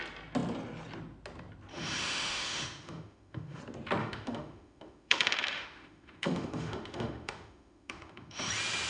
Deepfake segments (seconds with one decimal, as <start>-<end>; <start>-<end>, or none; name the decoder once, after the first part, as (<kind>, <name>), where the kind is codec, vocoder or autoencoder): 1.7-3.6 (autoencoder, DAC-VAE); 4.0-8.5